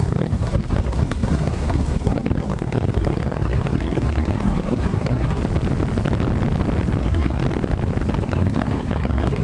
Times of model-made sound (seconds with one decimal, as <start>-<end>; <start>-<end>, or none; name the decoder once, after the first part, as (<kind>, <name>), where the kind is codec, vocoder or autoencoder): 0.0-5.4 (codec, SNAC); 7.0-7.4; 8.2-9.4

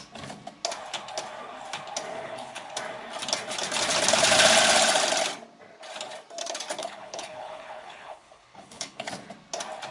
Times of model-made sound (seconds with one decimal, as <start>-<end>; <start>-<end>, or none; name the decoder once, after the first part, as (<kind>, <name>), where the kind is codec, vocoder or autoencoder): 2.1-2.7 (codec, HILCodec); 6.8-9.1

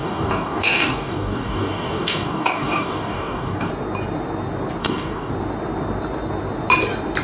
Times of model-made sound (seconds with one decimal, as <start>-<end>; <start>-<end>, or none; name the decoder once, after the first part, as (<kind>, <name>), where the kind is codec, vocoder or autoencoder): 0.0-3.7 (codec, DAC); 4.8-5.3

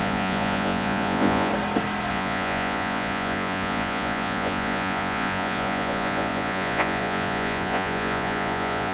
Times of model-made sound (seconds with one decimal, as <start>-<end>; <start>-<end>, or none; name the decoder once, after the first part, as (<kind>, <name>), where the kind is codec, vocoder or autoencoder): 0.0-1.5 (vocoder, Vocos); 2.1-8.9

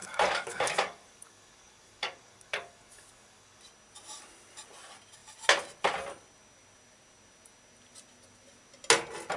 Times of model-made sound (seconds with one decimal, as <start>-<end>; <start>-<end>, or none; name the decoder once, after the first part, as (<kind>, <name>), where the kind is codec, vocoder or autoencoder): 0.0-3.6 (codec, DAC)

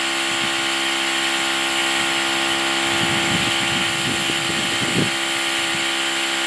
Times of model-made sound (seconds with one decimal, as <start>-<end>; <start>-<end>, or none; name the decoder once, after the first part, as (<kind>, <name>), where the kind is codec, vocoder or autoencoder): none

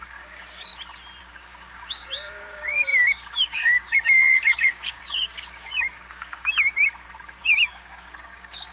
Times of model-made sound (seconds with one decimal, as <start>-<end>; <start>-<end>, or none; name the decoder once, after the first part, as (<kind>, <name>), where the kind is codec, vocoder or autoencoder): 0.0-0.7 (codec, DAC); 1.2-6.8; 7.4-8.7